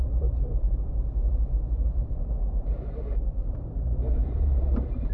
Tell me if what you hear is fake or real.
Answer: fake